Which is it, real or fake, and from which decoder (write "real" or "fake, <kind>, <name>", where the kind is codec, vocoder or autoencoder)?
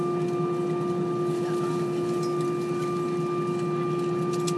real